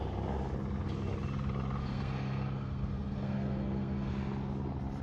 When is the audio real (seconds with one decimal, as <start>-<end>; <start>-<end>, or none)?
0.0-1.8; 4.1-5.0